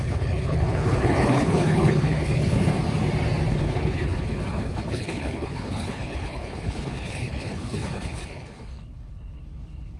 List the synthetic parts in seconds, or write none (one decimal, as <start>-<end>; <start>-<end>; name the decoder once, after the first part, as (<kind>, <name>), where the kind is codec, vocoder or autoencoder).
0.0-2.7 (codec, HILCodec); 3.5-10.0